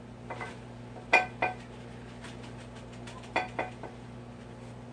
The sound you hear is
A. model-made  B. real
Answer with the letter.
B